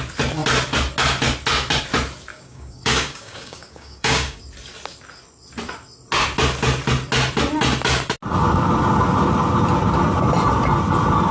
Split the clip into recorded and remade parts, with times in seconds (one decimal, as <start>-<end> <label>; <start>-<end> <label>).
0.0-2.3 recorded; 2.3-4.4 remade; 4.4-11.3 recorded